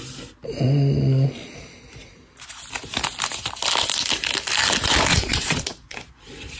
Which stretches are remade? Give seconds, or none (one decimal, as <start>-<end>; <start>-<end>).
5.1-6.6